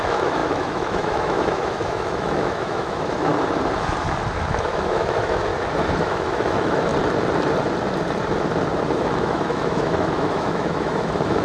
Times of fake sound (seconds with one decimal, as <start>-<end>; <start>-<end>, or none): 0.0-3.3; 4.5-5.5; 6.0-6.9; 9.0-11.4